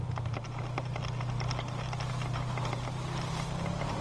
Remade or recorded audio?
recorded